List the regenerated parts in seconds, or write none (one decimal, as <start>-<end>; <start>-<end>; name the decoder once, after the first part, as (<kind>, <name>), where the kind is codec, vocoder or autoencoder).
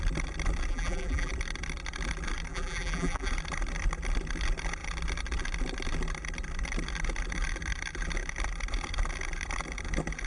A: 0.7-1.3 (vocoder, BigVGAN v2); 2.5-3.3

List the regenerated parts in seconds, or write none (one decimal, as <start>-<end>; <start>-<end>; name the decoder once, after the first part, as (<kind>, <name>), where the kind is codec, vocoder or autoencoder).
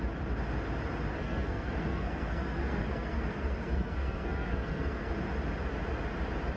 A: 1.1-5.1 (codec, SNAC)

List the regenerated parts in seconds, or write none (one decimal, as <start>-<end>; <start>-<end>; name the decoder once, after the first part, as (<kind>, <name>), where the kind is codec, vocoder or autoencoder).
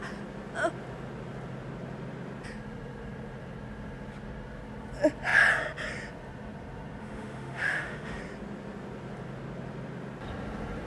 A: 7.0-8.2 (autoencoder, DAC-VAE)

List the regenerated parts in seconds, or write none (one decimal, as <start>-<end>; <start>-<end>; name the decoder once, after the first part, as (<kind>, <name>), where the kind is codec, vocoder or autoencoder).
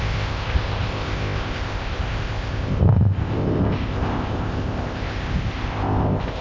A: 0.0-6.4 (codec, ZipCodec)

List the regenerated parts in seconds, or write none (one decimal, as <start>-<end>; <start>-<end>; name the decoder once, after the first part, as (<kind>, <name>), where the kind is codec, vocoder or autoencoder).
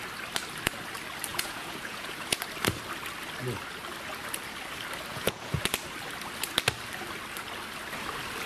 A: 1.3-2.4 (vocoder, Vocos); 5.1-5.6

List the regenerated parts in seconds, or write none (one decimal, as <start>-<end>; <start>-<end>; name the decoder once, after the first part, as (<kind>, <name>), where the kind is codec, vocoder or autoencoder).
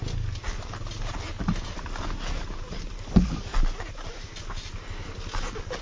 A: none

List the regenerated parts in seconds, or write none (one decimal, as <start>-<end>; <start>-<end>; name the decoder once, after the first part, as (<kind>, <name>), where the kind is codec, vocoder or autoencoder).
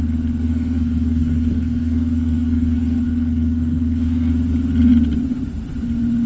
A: 0.5-4.3 (codec, SNAC)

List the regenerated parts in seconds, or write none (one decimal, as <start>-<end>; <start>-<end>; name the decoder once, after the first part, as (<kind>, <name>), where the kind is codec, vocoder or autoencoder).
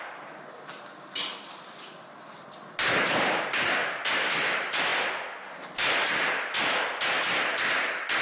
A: none